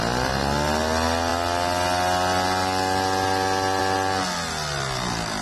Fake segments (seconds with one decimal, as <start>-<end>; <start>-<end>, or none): none